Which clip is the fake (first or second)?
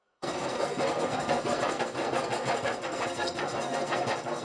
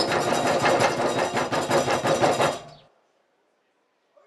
first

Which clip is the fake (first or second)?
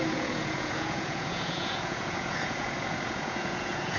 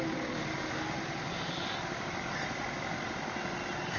first